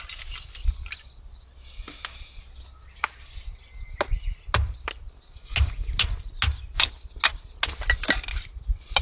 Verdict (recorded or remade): recorded